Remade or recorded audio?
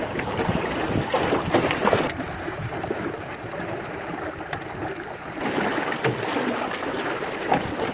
recorded